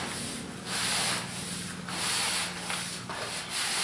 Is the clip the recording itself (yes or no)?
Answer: yes